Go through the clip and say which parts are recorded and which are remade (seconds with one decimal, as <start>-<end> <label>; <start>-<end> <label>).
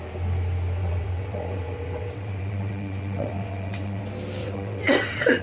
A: 0.0-0.8 recorded; 0.8-4.0 remade; 4.0-4.4 recorded; 4.4-5.4 remade